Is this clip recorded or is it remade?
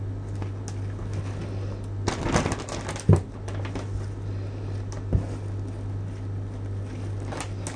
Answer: recorded